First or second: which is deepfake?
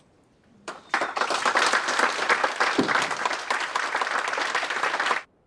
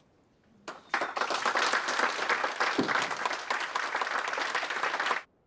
first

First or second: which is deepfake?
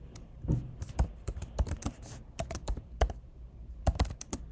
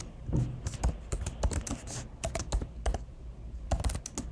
first